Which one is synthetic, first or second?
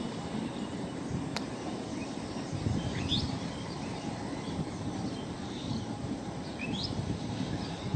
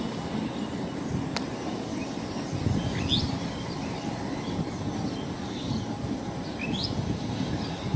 first